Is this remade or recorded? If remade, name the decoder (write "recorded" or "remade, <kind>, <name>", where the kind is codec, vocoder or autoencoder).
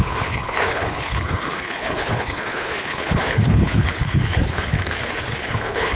remade, codec, HILCodec